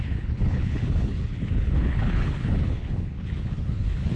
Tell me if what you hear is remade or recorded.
remade